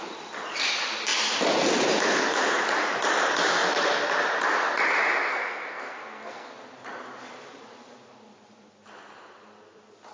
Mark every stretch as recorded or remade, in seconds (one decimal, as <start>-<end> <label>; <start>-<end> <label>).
0.0-5.3 recorded; 5.3-6.6 remade; 6.6-10.1 recorded

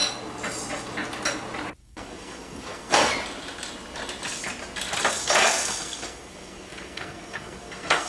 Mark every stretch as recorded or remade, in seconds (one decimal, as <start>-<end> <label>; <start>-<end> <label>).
0.0-1.8 recorded; 1.8-3.1 remade; 3.1-5.1 recorded; 5.1-8.1 remade

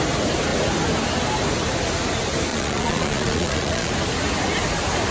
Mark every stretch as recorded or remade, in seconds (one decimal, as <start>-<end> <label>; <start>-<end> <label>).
0.0-2.5 recorded; 2.5-3.9 remade; 3.9-5.1 recorded

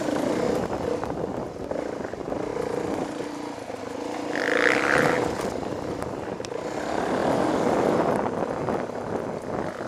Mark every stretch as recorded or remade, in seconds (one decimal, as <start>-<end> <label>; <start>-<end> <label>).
0.0-2.5 recorded; 2.5-3.8 remade; 3.8-9.9 recorded

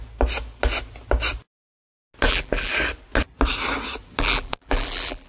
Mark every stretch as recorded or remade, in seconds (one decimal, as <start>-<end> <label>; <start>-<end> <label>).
0.0-2.3 recorded; 2.3-2.7 remade; 2.7-4.2 recorded; 4.2-5.3 remade

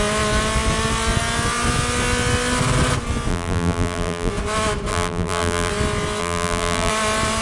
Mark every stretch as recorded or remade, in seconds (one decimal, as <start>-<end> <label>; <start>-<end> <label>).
0.0-3.3 recorded; 3.3-4.3 remade; 4.3-4.9 recorded; 4.9-5.7 remade; 5.7-6.2 recorded; 6.2-6.9 remade; 6.9-7.4 recorded

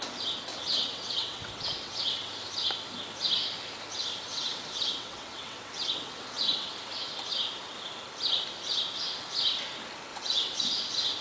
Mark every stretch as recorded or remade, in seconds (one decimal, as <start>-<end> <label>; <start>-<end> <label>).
0.0-0.5 recorded; 0.5-2.3 remade; 2.3-4.3 recorded; 4.3-6.7 remade; 6.7-10.1 recorded; 10.1-10.6 remade; 10.6-11.2 recorded

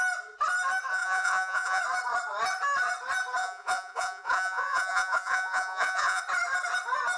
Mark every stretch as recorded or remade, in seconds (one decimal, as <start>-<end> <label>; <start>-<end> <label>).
0.0-0.9 recorded; 0.9-1.8 remade; 1.8-3.4 recorded; 3.4-6.2 remade; 6.2-7.2 recorded